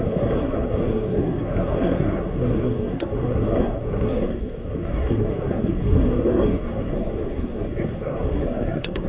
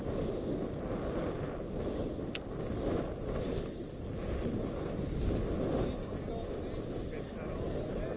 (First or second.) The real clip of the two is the second